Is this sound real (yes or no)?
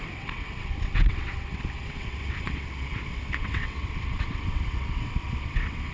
no